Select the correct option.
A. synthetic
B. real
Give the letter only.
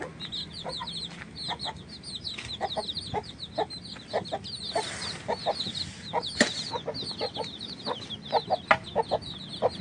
B